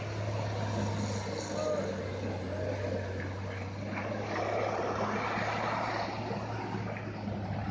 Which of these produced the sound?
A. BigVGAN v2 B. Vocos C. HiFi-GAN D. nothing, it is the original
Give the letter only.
D